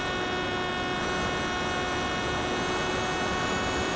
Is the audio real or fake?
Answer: real